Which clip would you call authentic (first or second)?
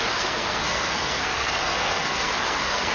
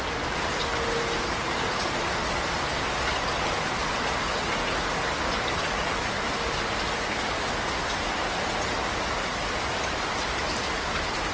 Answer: second